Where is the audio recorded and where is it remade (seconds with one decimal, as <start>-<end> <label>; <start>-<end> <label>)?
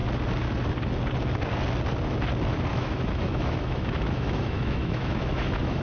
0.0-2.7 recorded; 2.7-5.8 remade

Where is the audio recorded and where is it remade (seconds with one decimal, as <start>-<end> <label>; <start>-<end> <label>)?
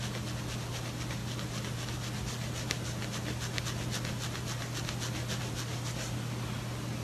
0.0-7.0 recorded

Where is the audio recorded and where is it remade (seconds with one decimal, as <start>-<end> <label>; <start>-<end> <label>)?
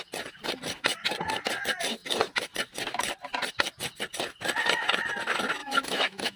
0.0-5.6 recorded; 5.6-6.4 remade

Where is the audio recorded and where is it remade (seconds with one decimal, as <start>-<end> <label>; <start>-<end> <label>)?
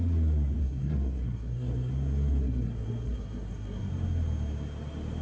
0.0-0.6 recorded; 0.6-1.9 remade; 1.9-2.4 recorded; 2.4-3.9 remade; 3.9-5.2 recorded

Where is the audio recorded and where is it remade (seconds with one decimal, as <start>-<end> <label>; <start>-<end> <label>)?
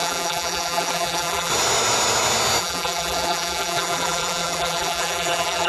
0.0-1.5 remade; 1.5-2.6 recorded; 2.6-5.7 remade